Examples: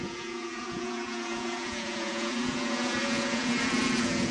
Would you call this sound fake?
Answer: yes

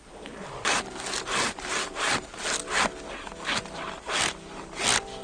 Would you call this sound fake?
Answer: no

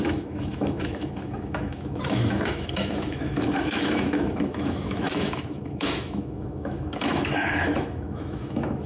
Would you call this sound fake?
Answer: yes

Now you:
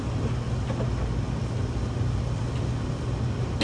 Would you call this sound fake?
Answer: no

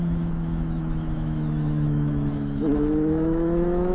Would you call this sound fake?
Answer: yes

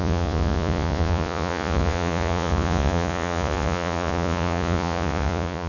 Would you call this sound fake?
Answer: yes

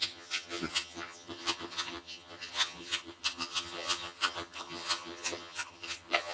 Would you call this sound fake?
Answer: yes